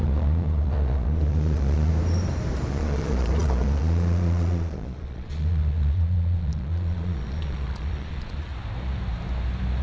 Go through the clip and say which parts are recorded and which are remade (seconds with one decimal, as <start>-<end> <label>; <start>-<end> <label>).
0.0-1.9 remade; 1.9-2.7 recorded; 2.7-8.5 remade; 8.5-9.8 recorded